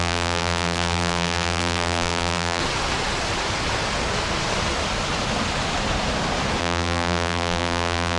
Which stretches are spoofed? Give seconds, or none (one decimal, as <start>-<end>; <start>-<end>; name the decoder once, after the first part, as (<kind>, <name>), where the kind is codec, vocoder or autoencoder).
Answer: 0.0-2.6 (vocoder, BigVGAN v2); 6.6-8.2